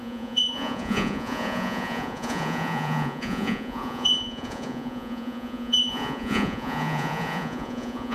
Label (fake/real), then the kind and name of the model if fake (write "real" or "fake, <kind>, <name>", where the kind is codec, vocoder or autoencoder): fake, vocoder, Vocos